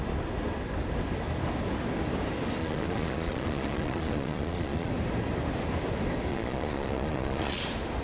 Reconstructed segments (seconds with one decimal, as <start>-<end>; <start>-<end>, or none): 2.6-4.9; 6.3-7.6

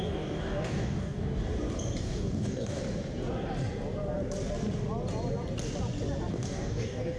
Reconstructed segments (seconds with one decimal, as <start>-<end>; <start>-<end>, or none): 0.0-1.4; 2.0-2.8; 6.3-7.2

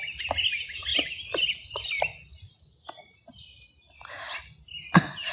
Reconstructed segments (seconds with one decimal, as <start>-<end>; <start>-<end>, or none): none

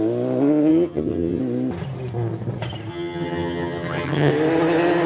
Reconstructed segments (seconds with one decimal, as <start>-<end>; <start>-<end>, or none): 0.7-1.4; 2.9-4.3

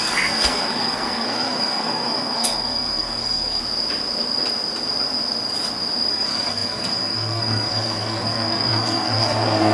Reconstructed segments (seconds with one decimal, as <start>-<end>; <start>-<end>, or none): 0.0-3.6; 6.1-9.7